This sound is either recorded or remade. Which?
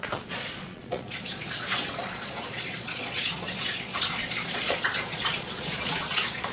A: remade